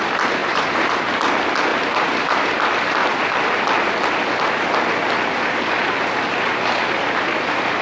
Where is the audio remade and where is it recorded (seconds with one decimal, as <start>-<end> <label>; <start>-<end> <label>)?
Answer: 0.0-0.4 recorded; 0.4-1.1 remade; 1.1-1.7 recorded; 1.7-2.5 remade; 2.5-7.8 recorded